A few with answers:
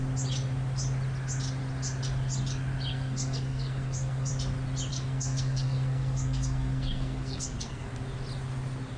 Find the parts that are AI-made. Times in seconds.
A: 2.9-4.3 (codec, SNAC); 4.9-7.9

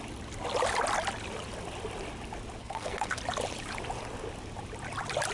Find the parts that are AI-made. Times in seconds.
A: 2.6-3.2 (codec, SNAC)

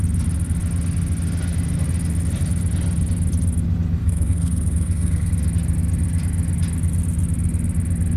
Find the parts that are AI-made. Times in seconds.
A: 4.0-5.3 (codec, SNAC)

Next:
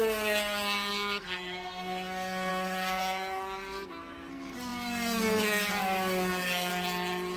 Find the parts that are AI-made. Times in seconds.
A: 0.0-6.7 (codec, SNAC)

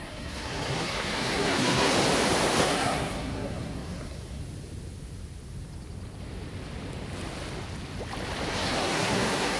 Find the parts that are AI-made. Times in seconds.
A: 0.0-1.9 (codec, SNAC); 2.6-4.4; 8.5-9.6

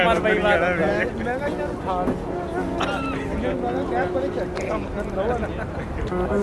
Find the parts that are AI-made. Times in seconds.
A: none